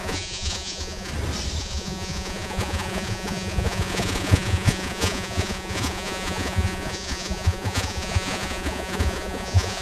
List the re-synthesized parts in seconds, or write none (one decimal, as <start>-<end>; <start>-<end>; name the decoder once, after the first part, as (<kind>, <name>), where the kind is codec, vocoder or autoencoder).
0.0-1.1 (vocoder, Vocos); 1.6-9.8